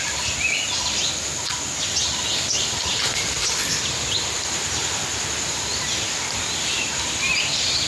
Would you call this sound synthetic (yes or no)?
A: no